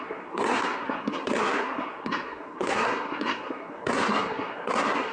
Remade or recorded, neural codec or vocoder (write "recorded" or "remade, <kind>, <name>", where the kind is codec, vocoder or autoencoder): remade, codec, SNAC